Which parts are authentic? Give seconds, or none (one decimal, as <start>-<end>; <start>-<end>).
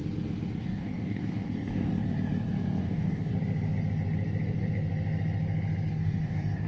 0.0-0.6; 1.9-2.8; 3.3-5.9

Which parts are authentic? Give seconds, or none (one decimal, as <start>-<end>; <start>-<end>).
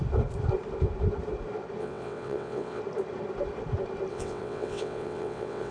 0.0-1.8; 2.8-4.1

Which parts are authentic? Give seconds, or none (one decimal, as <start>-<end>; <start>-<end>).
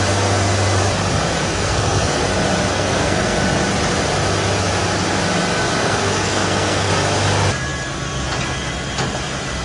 0.0-1.4; 2.2-2.7; 3.4-5.8; 6.9-9.6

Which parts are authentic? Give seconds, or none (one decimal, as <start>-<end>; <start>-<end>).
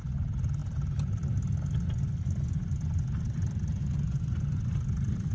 0.0-5.3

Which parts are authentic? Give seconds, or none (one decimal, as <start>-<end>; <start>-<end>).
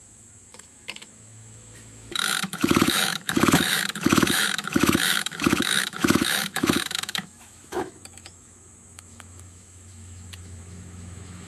none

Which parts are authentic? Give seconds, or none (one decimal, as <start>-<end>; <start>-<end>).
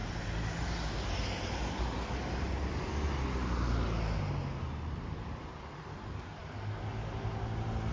0.0-7.9